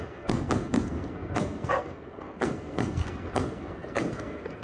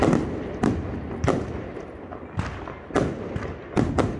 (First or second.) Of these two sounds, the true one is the second